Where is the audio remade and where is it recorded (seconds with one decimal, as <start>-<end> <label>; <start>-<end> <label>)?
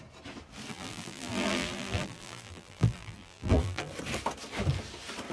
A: 0.0-0.7 recorded; 0.7-3.9 remade; 3.9-5.3 recorded